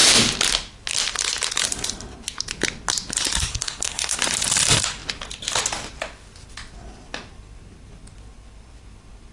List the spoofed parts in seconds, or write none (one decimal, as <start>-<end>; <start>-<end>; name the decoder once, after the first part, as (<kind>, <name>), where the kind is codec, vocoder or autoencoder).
3.5-4.2 (codec, SNAC)

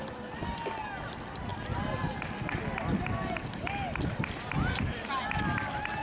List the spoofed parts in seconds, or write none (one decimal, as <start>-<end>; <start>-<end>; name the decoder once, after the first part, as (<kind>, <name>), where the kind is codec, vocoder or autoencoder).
none

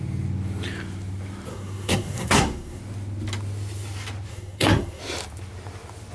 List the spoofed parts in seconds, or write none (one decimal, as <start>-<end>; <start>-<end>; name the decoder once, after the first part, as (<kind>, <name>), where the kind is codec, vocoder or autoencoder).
1.5-2.8 (codec, SNAC); 4.3-5.0